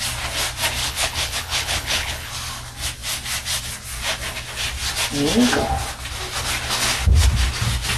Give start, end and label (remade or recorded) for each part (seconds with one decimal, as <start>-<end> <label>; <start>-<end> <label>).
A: 0.0-0.8 recorded; 0.8-2.3 remade; 2.3-8.0 recorded